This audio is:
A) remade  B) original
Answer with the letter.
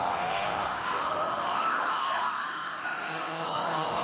A